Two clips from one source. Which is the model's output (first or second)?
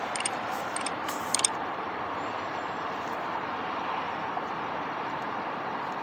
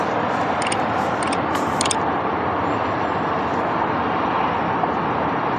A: first